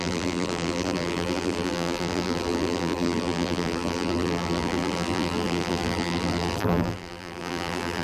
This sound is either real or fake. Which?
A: fake